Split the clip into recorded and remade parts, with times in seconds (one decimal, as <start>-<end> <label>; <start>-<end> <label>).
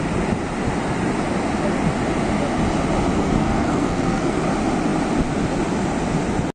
0.0-3.1 recorded; 3.1-4.4 remade; 4.4-6.5 recorded